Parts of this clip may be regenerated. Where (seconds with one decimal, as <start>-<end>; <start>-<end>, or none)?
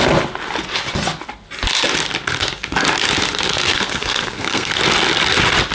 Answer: 3.7-4.7